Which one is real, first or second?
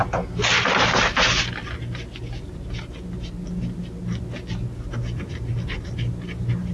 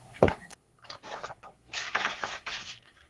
first